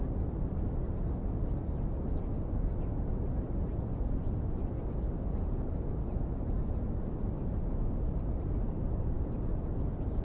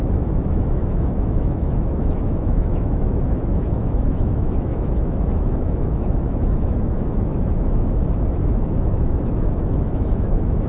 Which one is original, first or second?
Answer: first